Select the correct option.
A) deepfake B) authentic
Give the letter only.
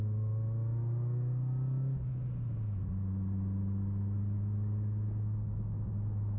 B